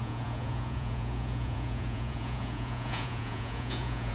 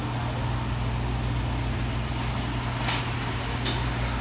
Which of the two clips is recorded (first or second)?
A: second